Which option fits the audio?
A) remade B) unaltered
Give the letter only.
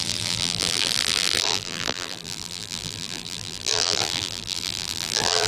A